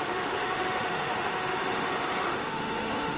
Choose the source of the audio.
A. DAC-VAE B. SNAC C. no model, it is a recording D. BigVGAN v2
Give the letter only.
A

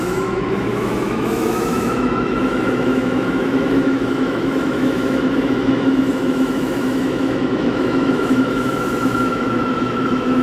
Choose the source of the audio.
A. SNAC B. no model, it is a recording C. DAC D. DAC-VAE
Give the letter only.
D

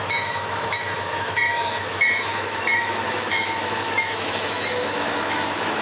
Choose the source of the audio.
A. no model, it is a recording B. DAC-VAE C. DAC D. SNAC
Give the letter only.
B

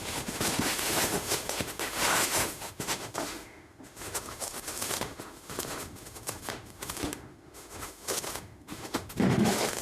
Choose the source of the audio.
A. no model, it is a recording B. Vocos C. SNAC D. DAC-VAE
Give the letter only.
D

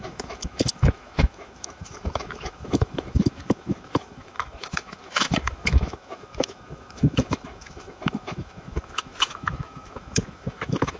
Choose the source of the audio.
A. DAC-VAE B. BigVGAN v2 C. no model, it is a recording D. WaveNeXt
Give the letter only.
A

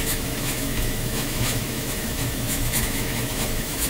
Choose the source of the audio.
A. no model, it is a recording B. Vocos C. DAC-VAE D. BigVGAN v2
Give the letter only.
C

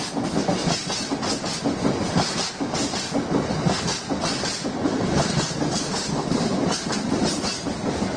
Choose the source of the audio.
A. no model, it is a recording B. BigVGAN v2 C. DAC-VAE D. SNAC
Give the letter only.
A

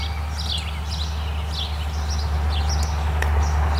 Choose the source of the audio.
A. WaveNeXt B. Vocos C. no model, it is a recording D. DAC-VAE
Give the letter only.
C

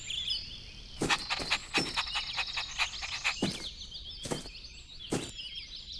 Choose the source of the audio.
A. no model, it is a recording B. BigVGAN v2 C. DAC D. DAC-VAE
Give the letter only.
A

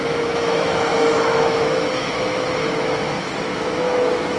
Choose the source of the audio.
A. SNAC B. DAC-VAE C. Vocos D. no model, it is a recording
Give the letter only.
B